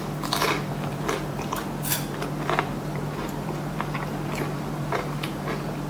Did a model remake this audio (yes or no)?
yes